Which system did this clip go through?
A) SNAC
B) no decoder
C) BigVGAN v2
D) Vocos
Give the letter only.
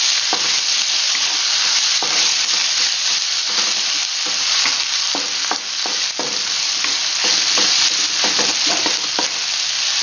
B